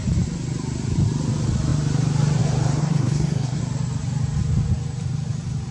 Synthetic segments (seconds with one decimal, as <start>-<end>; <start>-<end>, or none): 2.8-3.6